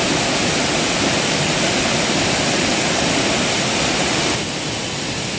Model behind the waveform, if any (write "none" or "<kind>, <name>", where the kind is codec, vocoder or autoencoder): none